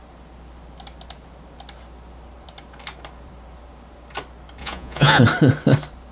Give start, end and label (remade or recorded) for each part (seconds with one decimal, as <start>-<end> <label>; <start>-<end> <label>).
0.0-4.6 recorded; 4.6-5.2 remade; 5.2-6.1 recorded